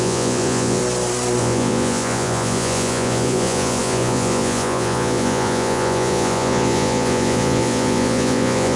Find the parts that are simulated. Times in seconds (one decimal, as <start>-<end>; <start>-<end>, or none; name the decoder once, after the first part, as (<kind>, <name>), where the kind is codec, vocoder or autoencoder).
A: 0.0-0.8 (vocoder, Vocos); 1.4-8.8